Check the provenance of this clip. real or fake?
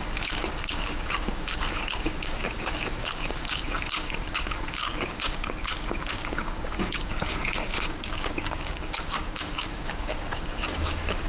fake